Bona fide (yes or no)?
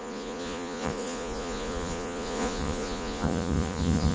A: no